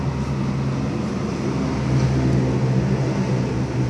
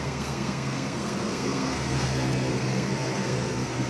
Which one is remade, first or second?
second